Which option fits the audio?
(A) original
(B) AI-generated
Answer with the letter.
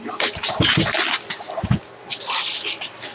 A